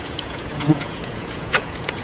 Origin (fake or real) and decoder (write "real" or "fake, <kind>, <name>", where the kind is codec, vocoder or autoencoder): fake, vocoder, Vocos